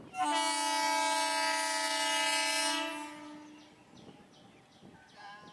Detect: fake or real real